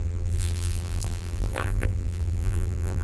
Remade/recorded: remade